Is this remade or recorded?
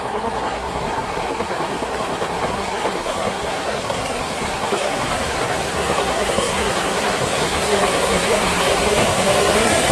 remade